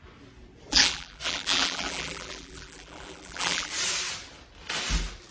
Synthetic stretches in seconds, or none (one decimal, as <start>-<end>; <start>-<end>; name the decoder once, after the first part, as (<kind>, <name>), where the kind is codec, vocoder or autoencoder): 0.7-3.7 (vocoder, BigVGAN v2)